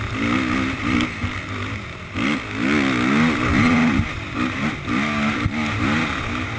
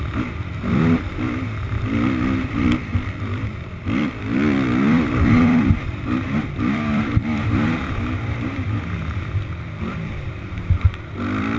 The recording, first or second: first